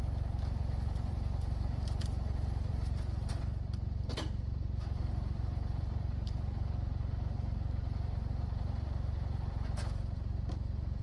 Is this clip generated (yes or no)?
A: yes